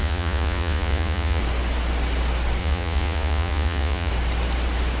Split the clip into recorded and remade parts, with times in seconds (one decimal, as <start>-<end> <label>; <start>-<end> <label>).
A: 0.0-1.4 remade; 1.4-2.6 recorded; 2.6-4.1 remade; 4.1-5.0 recorded